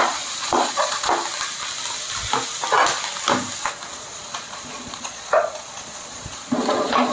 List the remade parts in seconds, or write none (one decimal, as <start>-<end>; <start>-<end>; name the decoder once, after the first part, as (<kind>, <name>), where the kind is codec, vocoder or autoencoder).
0.0-1.1 (vocoder, Vocos); 3.9-7.1